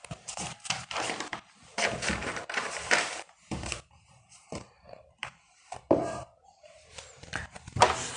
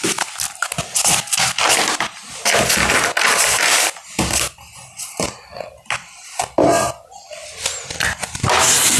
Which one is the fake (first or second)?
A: first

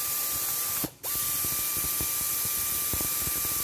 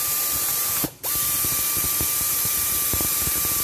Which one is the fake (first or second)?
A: second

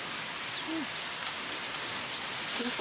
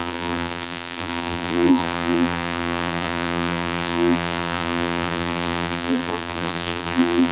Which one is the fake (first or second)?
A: second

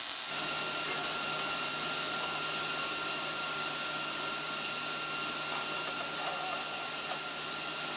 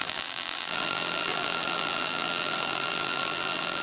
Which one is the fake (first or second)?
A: second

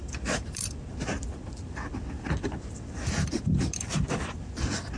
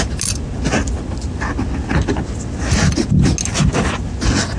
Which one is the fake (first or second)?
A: first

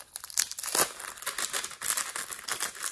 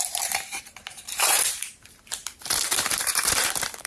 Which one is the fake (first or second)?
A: second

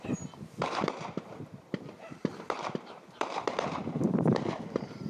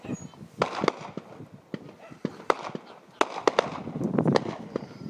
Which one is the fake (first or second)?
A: first